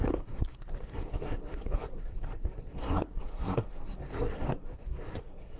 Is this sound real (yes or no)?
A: no